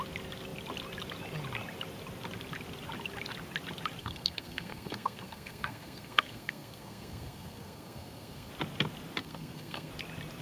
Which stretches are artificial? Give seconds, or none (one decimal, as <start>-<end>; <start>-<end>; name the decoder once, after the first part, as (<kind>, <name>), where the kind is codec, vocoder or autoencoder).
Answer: 4.0-8.5 (codec, SNAC); 9.2-9.9